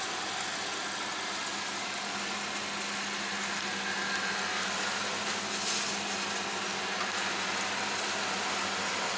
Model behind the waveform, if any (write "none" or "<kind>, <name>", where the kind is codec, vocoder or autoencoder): none